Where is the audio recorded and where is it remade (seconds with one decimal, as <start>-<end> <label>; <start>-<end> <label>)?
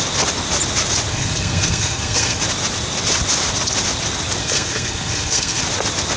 0.0-1.1 recorded; 1.1-2.4 remade; 2.4-4.4 recorded; 4.4-5.6 remade; 5.6-6.2 recorded